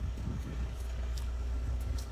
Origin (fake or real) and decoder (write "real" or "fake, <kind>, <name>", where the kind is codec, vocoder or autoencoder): fake, codec, DAC